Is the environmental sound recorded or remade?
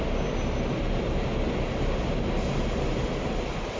recorded